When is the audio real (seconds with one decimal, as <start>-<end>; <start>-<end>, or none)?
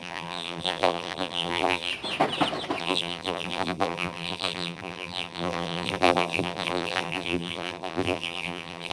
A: 1.9-2.8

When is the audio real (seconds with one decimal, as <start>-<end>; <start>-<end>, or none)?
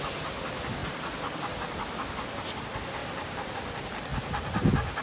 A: 0.0-3.0; 3.5-5.0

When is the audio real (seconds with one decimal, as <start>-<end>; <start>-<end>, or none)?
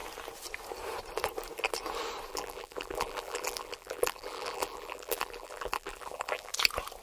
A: 0.0-2.3; 6.5-7.0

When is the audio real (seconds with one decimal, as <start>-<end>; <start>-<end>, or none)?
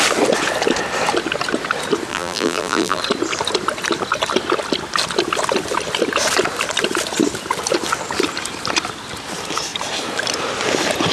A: 0.0-2.1; 3.0-11.1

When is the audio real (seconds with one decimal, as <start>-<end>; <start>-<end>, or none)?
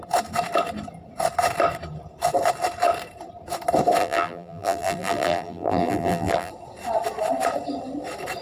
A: 0.0-4.0; 6.5-8.4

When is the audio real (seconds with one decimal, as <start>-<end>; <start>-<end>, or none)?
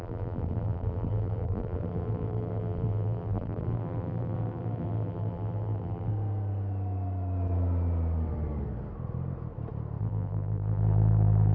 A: 6.1-10.0